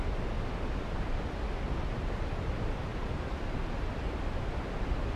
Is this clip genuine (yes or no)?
yes